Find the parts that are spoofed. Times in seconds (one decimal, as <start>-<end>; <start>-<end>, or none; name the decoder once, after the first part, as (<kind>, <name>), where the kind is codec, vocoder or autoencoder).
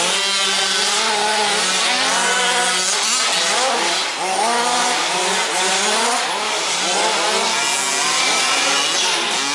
none